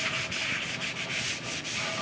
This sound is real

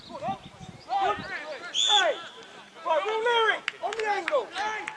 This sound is real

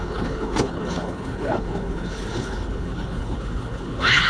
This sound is fake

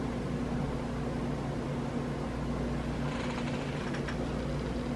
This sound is real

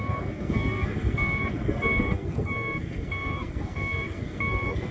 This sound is fake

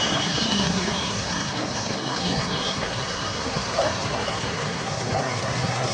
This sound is fake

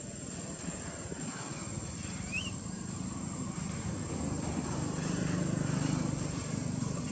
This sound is real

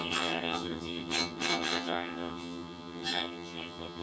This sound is fake